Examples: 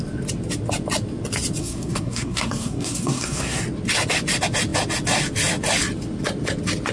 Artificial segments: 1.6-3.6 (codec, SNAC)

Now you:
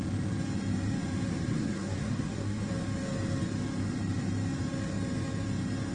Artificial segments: 1.5-2.7 (codec, SNAC)

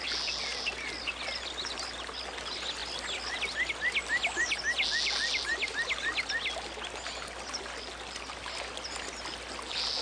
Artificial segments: none

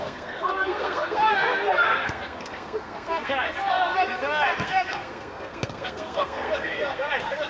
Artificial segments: 0.0-7.5 (codec, SNAC)

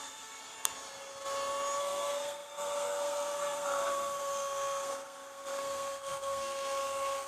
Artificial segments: 0.0-0.4 (codec, SNAC); 1.8-7.3

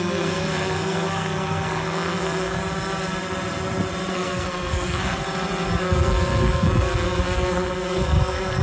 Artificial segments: 0.0-2.6 (codec, SNAC); 4.1-5.2; 5.8-8.6

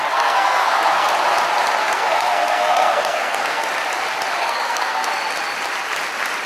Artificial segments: 0.0-1.1 (codec, SNAC); 1.8-3.6; 4.4-5.1